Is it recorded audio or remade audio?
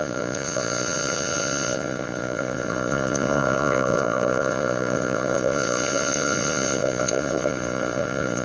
remade